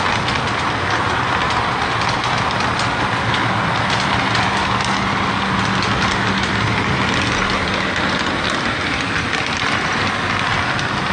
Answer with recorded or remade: recorded